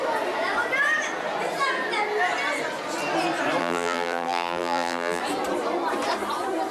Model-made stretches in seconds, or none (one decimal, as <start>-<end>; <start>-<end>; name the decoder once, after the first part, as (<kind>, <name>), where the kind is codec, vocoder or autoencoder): 3.6-5.2 (vocoder, BigVGAN v2)